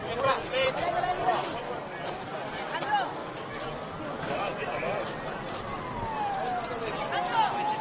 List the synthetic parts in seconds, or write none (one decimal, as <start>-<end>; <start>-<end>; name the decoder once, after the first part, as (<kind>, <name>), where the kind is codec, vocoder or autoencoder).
0.0-1.7 (vocoder, BigVGAN v2); 3.2-3.9; 4.5-6.4